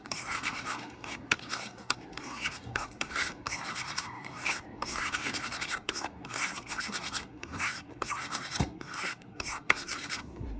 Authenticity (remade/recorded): remade